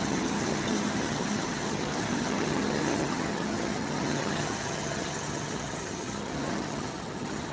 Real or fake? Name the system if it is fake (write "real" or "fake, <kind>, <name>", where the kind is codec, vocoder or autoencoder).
fake, vocoder, HiFi-GAN